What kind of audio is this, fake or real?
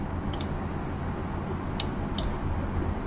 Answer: real